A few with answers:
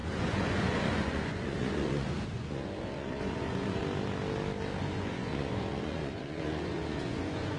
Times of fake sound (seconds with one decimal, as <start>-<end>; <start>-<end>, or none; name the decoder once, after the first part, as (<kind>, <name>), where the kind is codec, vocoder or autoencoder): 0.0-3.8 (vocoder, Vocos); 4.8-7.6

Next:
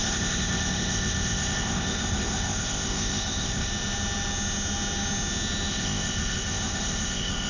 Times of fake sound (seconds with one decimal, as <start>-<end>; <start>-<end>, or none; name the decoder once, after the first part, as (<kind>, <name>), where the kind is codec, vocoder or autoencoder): 0.0-3.7 (codec, ZipCodec); 5.7-7.5

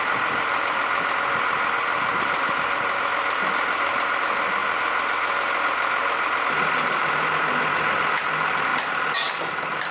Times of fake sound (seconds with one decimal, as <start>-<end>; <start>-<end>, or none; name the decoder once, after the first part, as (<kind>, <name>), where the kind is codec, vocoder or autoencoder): 0.0-4.6 (vocoder, BigVGAN v2); 8.2-8.7